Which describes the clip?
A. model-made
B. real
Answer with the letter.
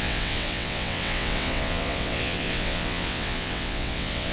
A